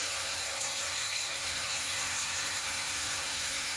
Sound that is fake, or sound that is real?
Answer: fake